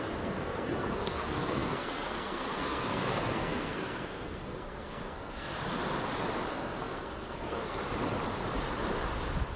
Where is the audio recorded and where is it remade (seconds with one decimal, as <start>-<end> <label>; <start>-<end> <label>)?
0.0-5.5 remade; 5.5-6.5 recorded; 6.5-7.8 remade; 7.8-9.6 recorded